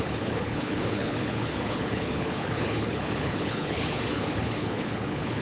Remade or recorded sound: remade